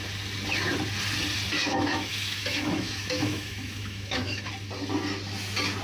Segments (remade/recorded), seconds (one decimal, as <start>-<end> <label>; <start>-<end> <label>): 0.0-1.6 recorded; 1.6-4.5 remade; 4.5-5.8 recorded